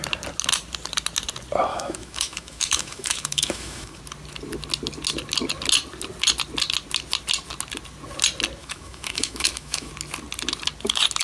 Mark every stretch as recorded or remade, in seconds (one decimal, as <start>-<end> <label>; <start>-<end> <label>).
0.0-1.7 recorded; 1.7-4.0 remade; 4.0-8.6 recorded; 8.6-9.9 remade; 9.9-11.2 recorded